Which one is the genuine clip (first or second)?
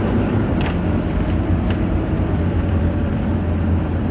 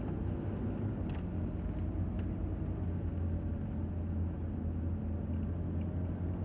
second